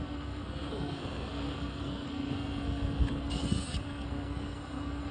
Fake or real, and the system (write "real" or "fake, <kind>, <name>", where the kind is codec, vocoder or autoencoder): fake, codec, SNAC